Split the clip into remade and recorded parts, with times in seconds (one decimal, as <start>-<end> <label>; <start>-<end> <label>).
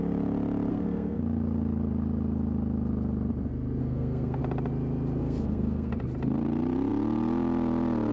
0.0-0.7 recorded; 0.7-1.2 remade; 1.2-3.8 recorded; 3.8-4.4 remade; 4.4-5.2 recorded; 5.2-5.9 remade; 5.9-8.1 recorded